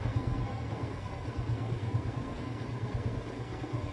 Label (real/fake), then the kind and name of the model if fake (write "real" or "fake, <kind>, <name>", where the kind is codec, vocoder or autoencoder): fake, codec, SNAC